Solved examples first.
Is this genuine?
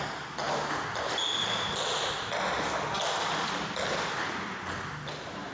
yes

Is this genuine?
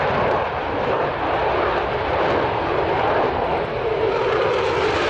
yes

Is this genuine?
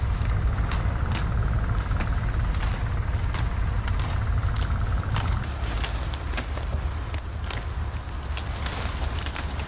yes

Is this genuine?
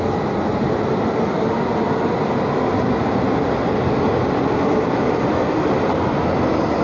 yes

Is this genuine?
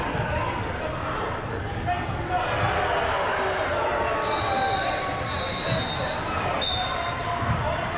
yes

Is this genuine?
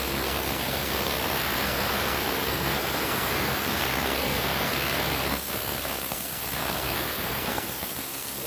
no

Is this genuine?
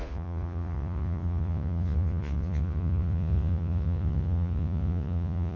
no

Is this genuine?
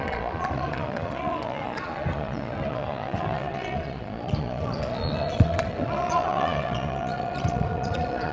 no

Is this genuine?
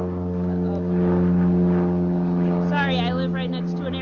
yes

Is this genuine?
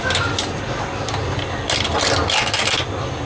yes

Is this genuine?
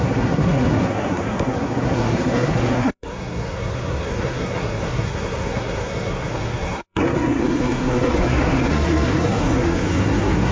no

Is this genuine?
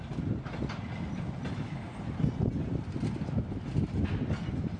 yes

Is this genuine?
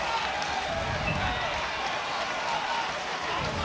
yes